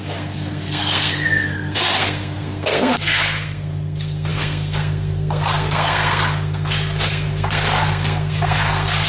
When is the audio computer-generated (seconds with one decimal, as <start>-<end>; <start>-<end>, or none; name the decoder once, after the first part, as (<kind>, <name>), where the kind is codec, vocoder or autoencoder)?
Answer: 0.0-9.1 (codec, SNAC)